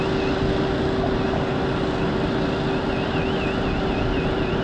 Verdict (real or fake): real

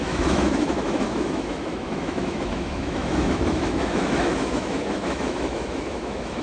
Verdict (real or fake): fake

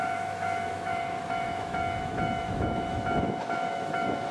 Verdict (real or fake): fake